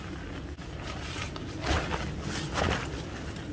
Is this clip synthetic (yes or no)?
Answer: no